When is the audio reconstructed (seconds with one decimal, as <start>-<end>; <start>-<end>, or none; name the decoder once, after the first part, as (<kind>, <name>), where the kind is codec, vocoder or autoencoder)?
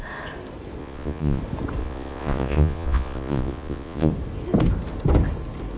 0.8-1.4 (vocoder, Vocos); 1.8-4.1